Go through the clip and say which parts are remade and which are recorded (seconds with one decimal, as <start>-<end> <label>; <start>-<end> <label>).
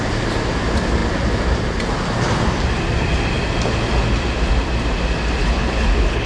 0.0-5.4 recorded; 5.4-6.3 remade